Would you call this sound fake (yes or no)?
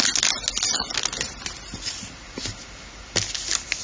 no